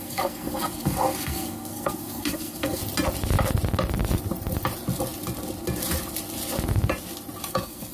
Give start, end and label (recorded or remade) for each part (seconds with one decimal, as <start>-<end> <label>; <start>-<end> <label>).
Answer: 0.0-2.8 remade; 2.8-7.5 recorded; 7.5-7.9 remade